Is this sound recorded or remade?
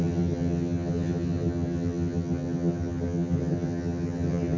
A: remade